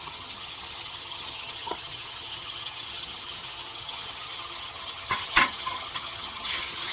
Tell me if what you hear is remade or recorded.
remade